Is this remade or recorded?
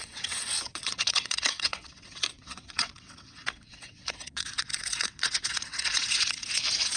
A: remade